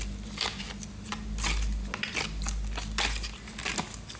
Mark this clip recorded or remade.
recorded